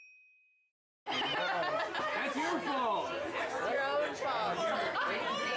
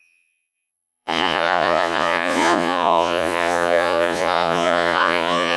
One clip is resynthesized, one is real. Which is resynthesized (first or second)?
second